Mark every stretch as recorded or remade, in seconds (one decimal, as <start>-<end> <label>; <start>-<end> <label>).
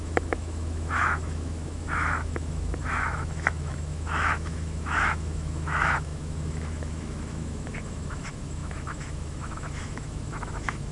0.0-10.9 remade